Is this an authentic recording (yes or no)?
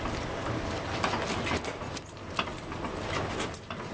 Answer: yes